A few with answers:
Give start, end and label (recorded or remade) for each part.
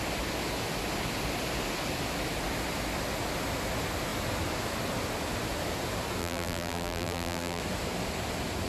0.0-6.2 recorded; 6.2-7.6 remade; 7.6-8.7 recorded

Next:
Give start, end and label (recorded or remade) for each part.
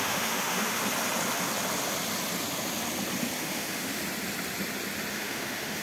0.0-0.8 remade; 0.8-3.4 recorded; 3.4-4.0 remade; 4.0-5.1 recorded; 5.1-5.8 remade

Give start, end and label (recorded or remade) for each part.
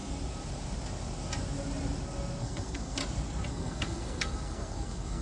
0.0-2.4 recorded; 2.4-3.0 remade; 3.0-3.5 recorded; 3.5-5.2 remade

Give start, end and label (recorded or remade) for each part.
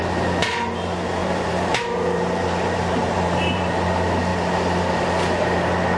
0.0-1.2 recorded; 1.2-3.7 remade; 3.7-6.0 recorded